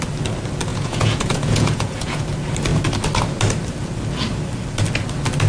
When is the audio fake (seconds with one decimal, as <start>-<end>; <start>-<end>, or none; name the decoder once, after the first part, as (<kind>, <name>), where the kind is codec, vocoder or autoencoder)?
0.7-2.2 (vocoder, Vocos)